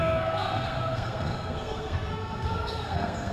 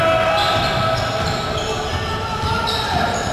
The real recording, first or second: second